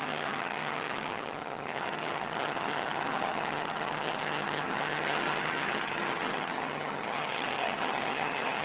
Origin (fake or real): fake